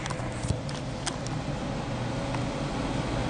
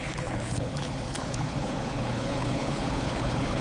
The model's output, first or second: second